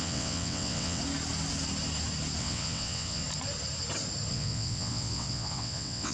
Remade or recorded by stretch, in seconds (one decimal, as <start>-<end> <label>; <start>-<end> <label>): 0.0-1.0 remade; 1.0-2.4 recorded; 2.4-3.2 remade; 3.2-4.3 recorded; 4.3-6.1 remade